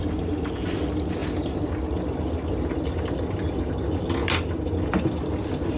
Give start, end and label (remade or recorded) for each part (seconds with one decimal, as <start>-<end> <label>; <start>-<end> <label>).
0.0-5.8 recorded